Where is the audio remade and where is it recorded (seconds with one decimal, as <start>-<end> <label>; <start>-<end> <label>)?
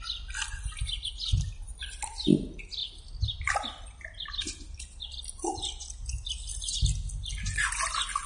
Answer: 0.0-8.3 recorded